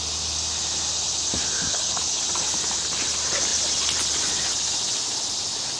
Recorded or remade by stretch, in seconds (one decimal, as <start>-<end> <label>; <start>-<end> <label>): 0.0-1.7 recorded; 1.7-2.2 remade; 2.2-5.8 recorded